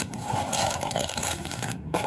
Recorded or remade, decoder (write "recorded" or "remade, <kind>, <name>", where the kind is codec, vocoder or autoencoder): remade, codec, SNAC